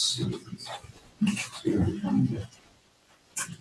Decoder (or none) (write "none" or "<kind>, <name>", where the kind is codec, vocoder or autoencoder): vocoder, Vocos